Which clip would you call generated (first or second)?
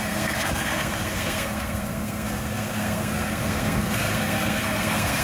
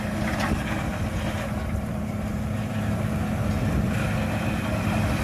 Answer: first